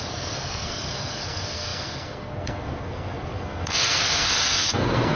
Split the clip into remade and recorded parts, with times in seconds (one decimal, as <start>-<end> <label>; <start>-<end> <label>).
0.0-5.2 remade